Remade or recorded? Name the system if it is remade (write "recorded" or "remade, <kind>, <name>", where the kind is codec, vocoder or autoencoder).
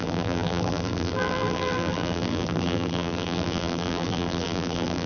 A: remade, vocoder, BigVGAN v2